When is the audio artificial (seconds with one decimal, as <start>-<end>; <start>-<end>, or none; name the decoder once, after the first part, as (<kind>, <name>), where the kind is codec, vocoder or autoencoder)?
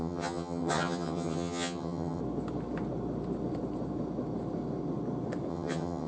0.0-2.2 (vocoder, HiFi-GAN); 5.5-6.1